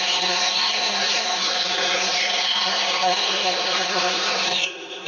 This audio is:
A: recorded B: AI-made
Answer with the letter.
B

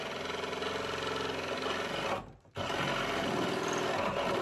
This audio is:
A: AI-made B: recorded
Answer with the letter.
B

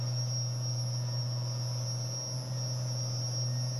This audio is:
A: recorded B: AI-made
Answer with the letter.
A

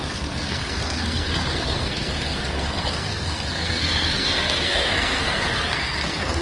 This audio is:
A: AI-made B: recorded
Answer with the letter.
A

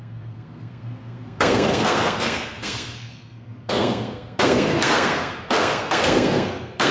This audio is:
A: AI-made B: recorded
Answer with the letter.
A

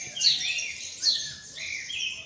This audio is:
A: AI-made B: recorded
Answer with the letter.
B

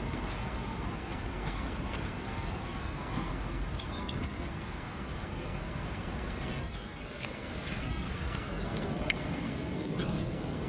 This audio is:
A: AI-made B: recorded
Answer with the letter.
A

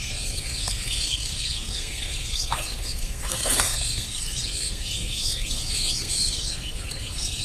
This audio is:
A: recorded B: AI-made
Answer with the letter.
B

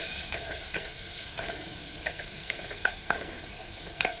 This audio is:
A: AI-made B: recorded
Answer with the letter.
A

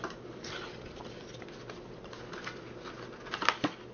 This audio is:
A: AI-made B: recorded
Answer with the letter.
B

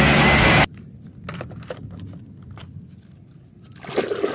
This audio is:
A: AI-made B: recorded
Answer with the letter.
B